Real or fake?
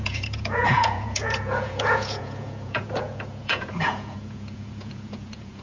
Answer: fake